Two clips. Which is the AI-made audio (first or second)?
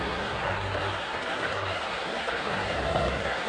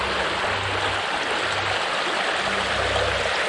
first